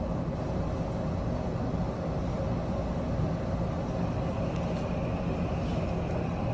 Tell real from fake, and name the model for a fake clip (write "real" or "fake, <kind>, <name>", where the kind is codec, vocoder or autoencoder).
real